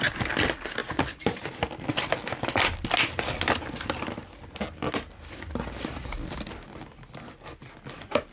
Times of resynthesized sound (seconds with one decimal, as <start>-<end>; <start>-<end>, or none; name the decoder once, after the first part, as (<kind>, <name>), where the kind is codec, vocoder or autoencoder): none